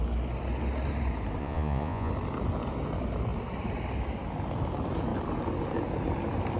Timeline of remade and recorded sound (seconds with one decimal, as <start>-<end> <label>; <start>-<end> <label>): 0.0-1.4 recorded; 1.4-2.1 remade; 2.1-6.6 recorded